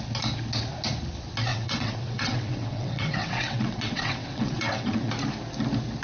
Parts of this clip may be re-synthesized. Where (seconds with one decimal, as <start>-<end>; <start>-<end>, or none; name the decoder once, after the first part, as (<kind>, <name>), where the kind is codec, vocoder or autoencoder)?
1.5-5.1 (vocoder, WaveNeXt)